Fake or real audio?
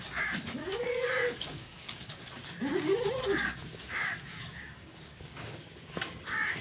fake